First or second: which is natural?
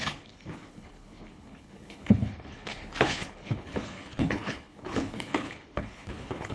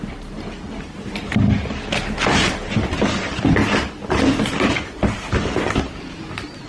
second